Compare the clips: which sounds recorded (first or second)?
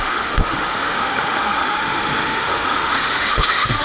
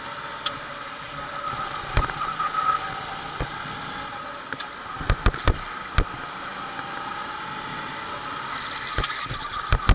second